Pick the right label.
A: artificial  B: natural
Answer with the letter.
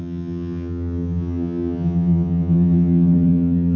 A